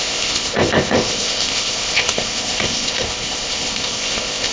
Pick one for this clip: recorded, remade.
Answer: remade